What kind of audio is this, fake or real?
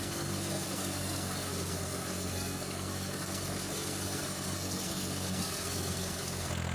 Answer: fake